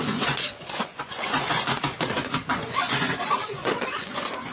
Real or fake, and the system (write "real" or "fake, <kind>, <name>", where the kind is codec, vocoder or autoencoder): fake, vocoder, Vocos